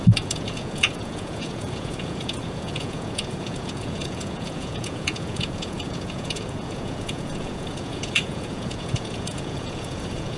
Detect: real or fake fake